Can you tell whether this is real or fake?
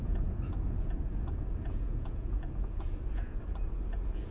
fake